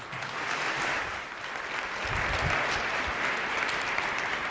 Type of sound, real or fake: fake